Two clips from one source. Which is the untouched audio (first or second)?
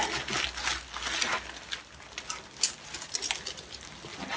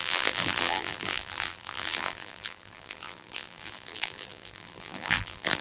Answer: first